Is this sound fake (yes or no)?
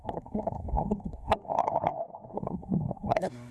yes